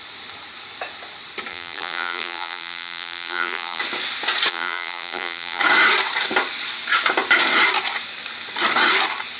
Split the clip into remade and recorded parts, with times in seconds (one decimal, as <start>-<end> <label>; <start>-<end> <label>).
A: 0.0-1.5 recorded; 1.5-3.8 remade; 3.8-4.5 recorded; 4.5-5.6 remade; 5.6-9.4 recorded